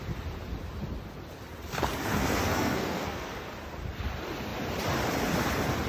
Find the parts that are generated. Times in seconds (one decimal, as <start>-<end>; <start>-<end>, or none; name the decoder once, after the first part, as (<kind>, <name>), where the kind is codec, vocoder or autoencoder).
2.1-3.5 (codec, SNAC)